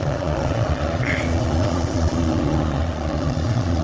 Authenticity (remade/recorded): remade